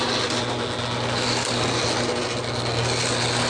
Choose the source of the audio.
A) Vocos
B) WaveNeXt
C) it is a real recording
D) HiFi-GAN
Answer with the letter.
C